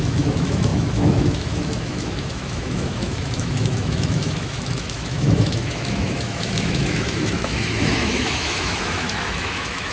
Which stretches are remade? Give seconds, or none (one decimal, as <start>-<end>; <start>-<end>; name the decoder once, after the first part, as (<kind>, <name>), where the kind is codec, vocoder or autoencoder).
0.0-9.9 (autoencoder, DAC-VAE)